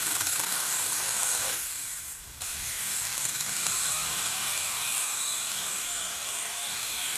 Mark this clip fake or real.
fake